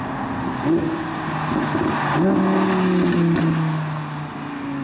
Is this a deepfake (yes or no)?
no